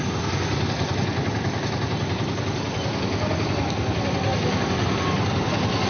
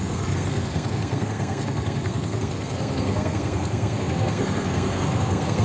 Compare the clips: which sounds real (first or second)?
first